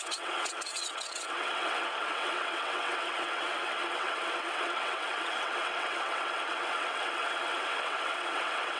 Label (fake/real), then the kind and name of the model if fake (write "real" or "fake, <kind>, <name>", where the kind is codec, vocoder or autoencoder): fake, vocoder, WaveNeXt